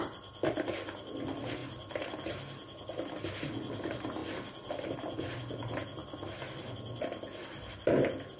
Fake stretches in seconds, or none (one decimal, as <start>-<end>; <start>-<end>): 4.2-4.7

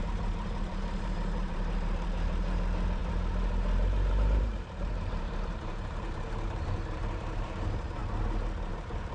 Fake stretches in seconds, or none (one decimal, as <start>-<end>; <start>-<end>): 0.0-8.0; 8.7-9.1

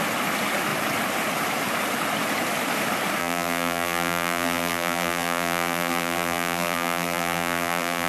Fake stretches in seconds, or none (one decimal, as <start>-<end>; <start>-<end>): 3.2-8.1

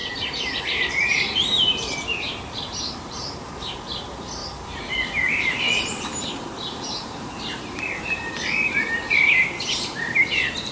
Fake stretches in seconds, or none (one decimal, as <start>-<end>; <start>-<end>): 0.0-10.7

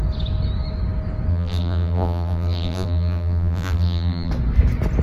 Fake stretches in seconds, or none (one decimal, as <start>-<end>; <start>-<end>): 1.3-4.3